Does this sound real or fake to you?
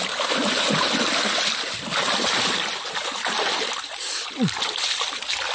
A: real